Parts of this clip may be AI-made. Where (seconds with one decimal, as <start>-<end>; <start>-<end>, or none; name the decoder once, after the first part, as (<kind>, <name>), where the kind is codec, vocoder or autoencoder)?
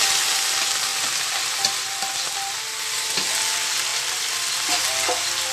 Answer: 0.9-2.0 (vocoder, BigVGAN v2); 3.9-4.8